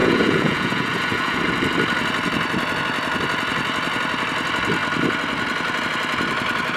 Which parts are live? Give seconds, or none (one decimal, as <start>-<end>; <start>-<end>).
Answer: 1.4-6.8